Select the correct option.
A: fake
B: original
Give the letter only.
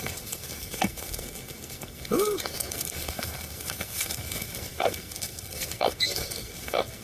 A